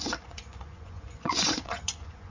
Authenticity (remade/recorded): remade